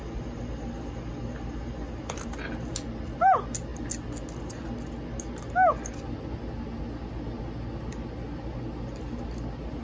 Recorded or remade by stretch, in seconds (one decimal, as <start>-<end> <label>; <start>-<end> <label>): 0.0-9.8 recorded